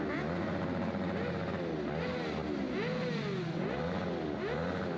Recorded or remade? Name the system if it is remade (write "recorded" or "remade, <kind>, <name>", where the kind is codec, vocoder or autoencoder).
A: recorded